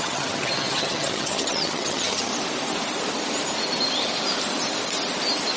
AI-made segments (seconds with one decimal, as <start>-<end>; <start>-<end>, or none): 0.0-2.3